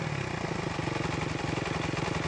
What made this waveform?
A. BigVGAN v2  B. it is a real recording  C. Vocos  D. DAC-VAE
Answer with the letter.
B